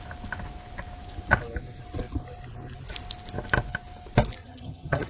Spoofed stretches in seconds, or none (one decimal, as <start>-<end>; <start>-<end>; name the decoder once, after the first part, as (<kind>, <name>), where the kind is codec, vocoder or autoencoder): 4.4-5.1 (vocoder, HiFi-GAN)